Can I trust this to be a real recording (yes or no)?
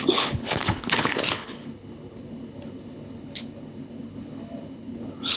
no